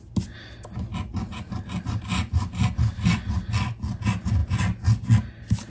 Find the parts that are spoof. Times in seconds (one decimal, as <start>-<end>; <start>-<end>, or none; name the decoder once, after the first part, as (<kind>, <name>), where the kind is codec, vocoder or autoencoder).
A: none